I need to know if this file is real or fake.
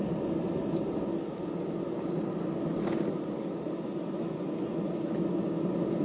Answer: real